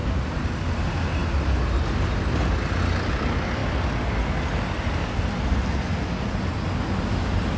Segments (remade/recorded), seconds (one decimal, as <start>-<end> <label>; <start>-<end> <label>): 0.0-7.6 recorded